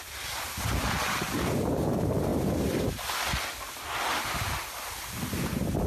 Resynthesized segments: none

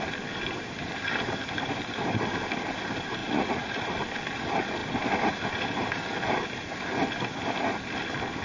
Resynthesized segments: 3.2-3.8 (vocoder, Vocos)

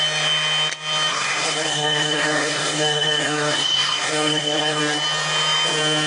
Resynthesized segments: 1.1-4.8 (codec, SNAC)

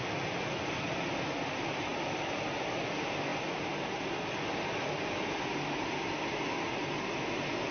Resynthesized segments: 1.9-2.9 (vocoder, BigVGAN v2)